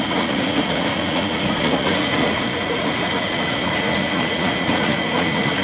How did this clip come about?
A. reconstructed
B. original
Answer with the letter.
A